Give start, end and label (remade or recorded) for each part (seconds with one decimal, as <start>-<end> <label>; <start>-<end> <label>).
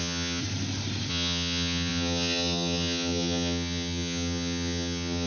0.0-0.4 remade; 0.4-1.1 recorded; 1.1-5.3 remade